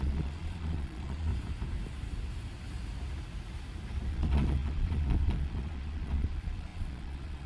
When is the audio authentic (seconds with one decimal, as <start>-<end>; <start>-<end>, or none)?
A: 1.3-4.1